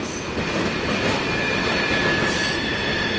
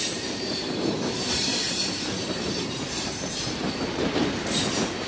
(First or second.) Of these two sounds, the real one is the first